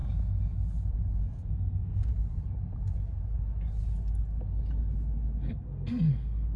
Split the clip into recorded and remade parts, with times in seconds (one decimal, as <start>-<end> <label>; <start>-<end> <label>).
0.0-1.2 recorded; 1.2-2.1 remade; 2.1-5.5 recorded; 5.5-6.6 remade

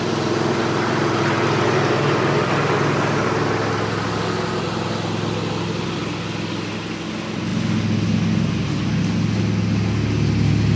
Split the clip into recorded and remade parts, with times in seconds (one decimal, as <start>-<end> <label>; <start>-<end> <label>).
0.0-10.8 recorded

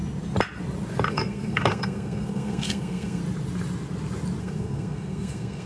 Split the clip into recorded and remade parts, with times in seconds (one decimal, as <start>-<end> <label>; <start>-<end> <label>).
0.0-1.1 recorded; 1.1-3.2 remade; 3.2-4.4 recorded; 4.4-5.7 remade

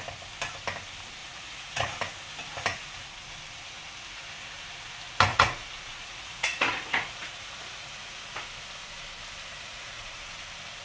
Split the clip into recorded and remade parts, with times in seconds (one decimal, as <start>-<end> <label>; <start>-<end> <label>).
0.0-1.2 recorded; 1.2-1.9 remade; 1.9-2.7 recorded; 2.7-3.3 remade; 3.3-5.3 recorded; 5.3-8.3 remade; 8.3-9.5 recorded; 9.5-10.4 remade; 10.4-10.8 recorded